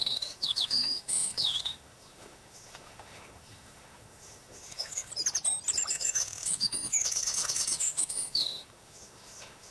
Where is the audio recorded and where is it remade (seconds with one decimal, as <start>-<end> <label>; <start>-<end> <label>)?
0.0-5.1 remade; 5.1-5.9 recorded; 5.9-9.7 remade